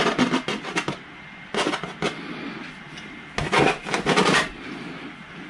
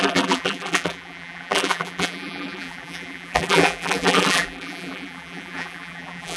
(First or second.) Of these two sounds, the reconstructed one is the second